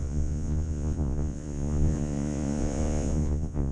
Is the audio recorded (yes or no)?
no